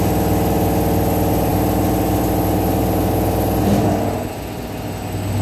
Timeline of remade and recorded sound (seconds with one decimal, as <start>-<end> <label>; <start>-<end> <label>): 0.0-5.4 recorded